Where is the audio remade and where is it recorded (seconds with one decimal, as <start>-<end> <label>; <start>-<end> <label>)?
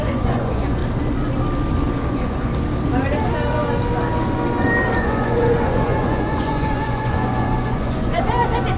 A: 0.0-0.8 remade; 0.8-2.1 recorded; 2.1-2.5 remade; 2.5-5.0 recorded; 5.0-8.8 remade